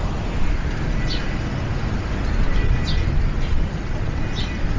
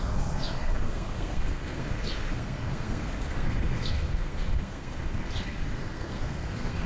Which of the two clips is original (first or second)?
first